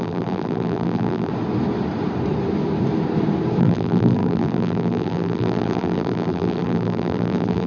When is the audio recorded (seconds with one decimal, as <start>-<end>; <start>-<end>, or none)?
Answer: 1.3-3.6